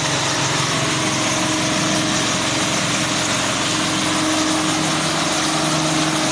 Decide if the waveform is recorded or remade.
recorded